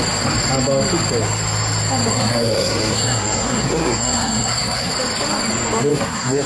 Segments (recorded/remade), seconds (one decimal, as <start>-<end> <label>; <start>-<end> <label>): 0.0-2.1 recorded; 2.1-4.9 remade; 4.9-5.9 recorded; 5.9-6.5 remade